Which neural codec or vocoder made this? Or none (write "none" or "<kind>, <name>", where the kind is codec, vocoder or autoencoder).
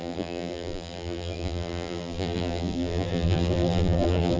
vocoder, BigVGAN v2